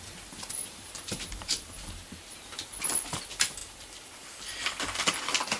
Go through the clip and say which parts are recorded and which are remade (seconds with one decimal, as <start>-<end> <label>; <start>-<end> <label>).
0.0-0.6 recorded; 0.6-2.5 remade; 2.5-5.6 recorded